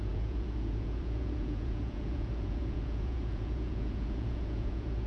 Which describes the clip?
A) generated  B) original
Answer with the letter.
A